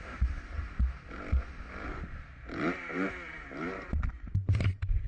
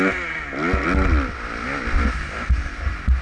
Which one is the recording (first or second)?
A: second